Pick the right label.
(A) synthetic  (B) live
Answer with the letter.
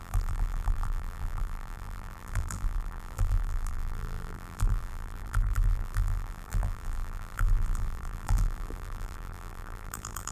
A